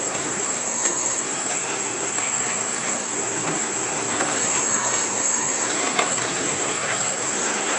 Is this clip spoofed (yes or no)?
yes